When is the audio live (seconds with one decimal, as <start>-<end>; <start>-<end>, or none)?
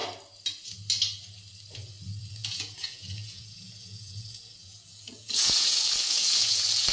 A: 0.0-2.2